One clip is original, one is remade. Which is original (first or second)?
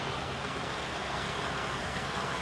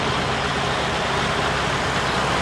second